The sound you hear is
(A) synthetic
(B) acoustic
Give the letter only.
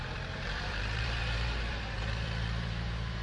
A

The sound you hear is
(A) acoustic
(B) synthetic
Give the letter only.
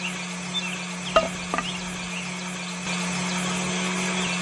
A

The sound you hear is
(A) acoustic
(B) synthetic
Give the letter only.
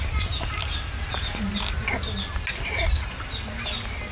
A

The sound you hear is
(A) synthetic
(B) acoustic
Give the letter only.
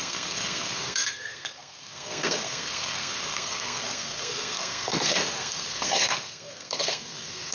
A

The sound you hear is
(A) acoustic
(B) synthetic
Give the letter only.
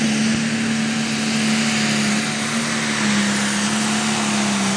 A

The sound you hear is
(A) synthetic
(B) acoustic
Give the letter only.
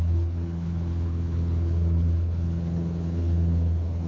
A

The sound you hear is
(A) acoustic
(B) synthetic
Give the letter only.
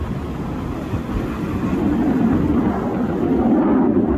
A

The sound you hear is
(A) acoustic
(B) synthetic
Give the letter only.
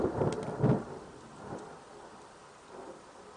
A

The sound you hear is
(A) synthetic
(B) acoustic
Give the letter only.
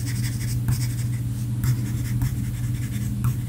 B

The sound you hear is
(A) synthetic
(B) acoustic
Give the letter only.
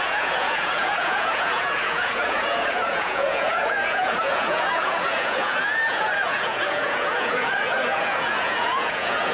A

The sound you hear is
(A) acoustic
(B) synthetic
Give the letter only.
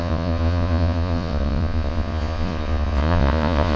B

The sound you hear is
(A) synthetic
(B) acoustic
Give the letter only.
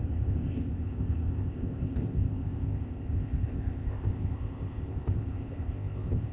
A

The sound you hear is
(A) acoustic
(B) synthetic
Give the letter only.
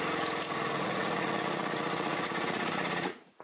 B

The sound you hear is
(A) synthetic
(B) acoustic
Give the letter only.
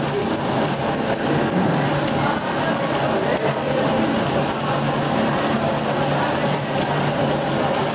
B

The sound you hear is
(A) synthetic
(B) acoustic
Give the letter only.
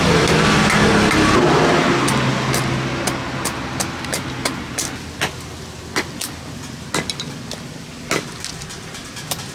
B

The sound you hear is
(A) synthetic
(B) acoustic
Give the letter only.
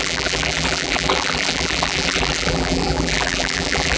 A